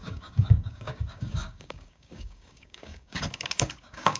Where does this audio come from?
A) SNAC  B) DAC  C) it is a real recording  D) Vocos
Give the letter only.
B